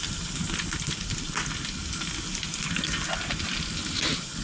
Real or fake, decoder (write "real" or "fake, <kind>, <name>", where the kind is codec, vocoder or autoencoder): real